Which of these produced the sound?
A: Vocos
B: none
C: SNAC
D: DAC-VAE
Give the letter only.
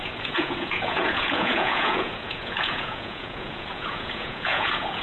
A